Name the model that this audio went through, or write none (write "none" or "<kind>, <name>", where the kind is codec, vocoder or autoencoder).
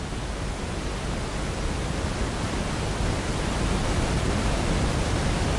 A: none